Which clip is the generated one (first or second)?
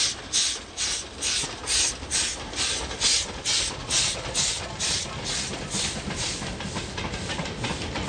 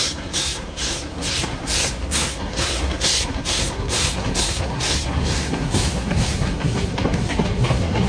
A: second